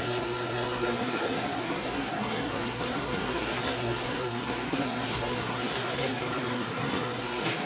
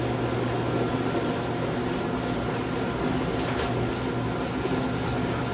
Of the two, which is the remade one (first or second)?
first